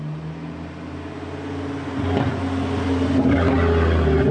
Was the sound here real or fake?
real